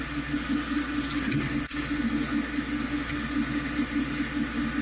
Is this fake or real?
real